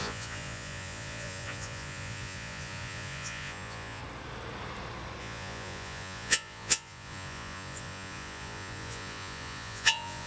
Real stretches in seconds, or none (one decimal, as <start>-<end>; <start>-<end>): 4.0-5.2